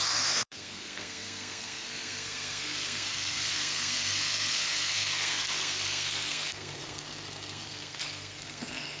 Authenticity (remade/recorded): remade